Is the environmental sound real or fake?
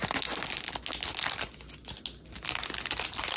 real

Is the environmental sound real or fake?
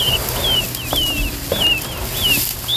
real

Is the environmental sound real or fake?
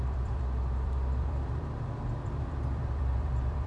fake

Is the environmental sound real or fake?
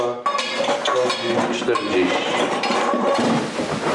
real